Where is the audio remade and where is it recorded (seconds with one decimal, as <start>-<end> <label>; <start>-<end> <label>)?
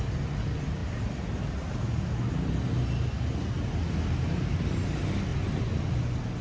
0.0-6.4 recorded